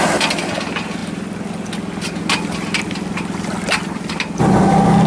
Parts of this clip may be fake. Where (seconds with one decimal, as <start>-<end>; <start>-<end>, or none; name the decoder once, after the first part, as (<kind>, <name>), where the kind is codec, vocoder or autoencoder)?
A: none